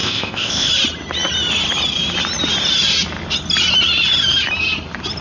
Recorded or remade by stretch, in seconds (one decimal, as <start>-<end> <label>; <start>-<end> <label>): 0.0-0.7 remade; 0.7-5.2 recorded